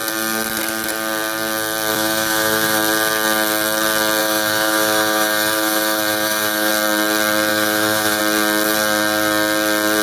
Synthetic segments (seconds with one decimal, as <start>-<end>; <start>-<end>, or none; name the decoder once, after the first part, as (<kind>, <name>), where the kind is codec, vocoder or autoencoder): 1.9-2.8 (autoencoder, DAC-VAE); 4.2-6.7; 7.5-8.2